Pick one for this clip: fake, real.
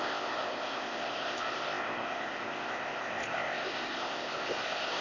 fake